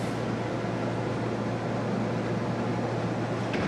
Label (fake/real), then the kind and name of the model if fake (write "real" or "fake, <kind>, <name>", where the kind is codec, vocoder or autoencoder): real